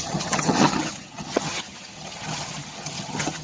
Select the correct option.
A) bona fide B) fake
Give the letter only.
B